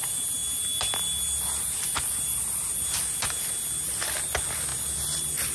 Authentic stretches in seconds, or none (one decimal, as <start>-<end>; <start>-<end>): 0.0-5.5